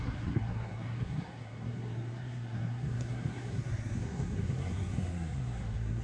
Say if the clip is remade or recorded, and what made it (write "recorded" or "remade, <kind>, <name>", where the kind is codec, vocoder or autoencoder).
remade, codec, SNAC